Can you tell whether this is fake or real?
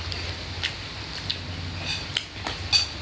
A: real